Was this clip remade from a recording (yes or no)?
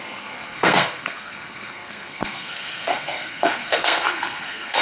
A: yes